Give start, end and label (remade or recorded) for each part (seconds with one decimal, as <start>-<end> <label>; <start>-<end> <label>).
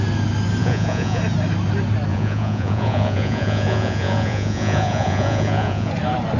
0.0-0.6 recorded; 0.6-1.2 remade; 1.2-2.1 recorded; 2.1-5.9 remade; 5.9-6.4 recorded